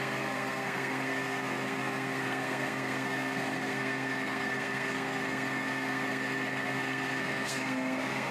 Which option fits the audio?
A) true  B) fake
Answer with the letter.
B